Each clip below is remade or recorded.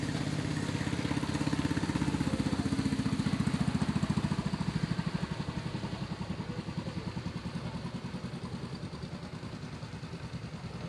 recorded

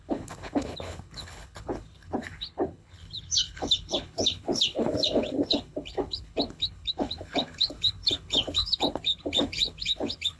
remade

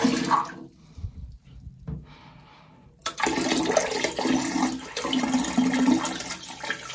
recorded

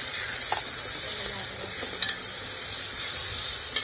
recorded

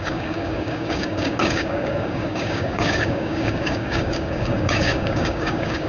remade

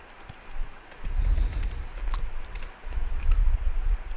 recorded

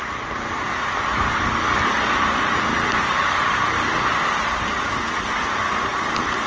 recorded